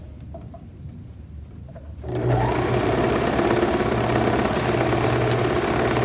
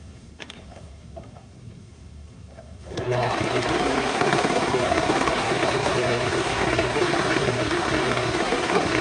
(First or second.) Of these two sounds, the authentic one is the first